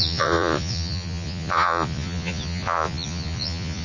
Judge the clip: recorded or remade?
remade